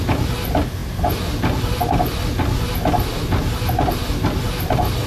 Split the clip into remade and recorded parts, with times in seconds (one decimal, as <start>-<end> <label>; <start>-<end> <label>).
0.0-5.1 recorded